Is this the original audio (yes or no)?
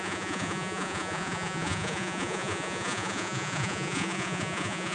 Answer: no